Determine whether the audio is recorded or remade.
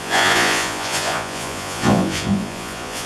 remade